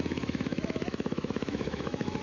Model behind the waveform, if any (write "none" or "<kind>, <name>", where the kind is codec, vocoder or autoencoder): autoencoder, DAC-VAE